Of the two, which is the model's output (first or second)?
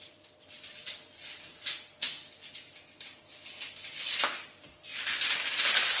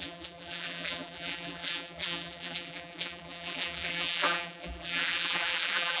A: second